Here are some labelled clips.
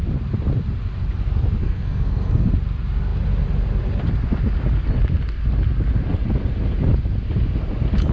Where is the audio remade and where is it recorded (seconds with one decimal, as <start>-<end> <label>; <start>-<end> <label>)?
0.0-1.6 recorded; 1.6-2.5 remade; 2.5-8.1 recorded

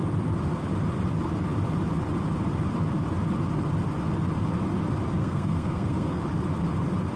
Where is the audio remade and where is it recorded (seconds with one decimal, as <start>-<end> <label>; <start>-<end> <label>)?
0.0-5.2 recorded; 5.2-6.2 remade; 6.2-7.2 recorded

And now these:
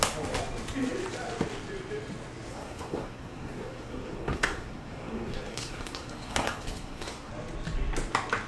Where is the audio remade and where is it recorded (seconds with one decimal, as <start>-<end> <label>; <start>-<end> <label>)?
0.0-2.5 recorded; 2.5-7.3 remade; 7.3-8.5 recorded

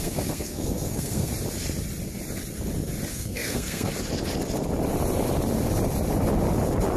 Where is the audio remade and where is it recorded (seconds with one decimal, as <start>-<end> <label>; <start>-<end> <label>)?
0.0-1.3 remade; 1.3-3.1 recorded; 3.1-3.9 remade; 3.9-7.0 recorded

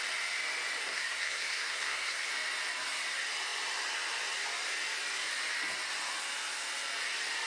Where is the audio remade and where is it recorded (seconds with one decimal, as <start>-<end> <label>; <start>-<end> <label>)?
0.0-0.8 recorded; 0.8-2.3 remade; 2.3-7.5 recorded